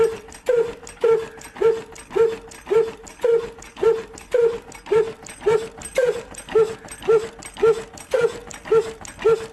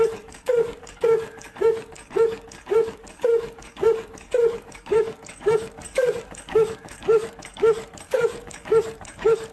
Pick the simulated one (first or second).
second